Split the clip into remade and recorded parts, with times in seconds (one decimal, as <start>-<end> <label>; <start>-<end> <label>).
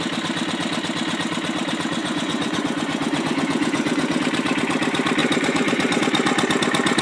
0.0-2.0 recorded; 2.0-4.2 remade; 4.2-5.2 recorded; 5.2-6.0 remade; 6.0-7.0 recorded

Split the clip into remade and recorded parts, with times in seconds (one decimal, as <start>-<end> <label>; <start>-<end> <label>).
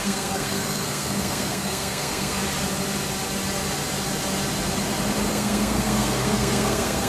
0.0-2.4 remade; 2.4-5.3 recorded; 5.3-7.1 remade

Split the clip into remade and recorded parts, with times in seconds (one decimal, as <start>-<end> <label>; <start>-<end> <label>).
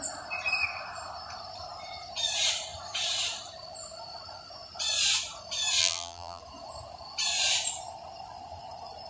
0.0-5.8 recorded; 5.8-6.4 remade; 6.4-9.1 recorded